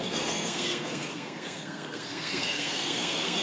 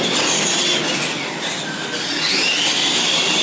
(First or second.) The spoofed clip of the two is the first